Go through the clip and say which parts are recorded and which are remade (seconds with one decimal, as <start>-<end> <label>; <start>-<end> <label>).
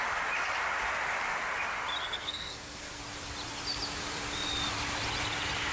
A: 0.0-2.0 recorded; 2.0-3.0 remade; 3.0-5.7 recorded